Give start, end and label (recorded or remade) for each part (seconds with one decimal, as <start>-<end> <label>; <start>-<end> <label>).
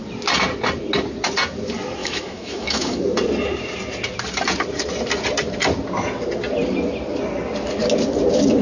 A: 0.0-2.0 recorded; 2.0-3.0 remade; 3.0-8.6 recorded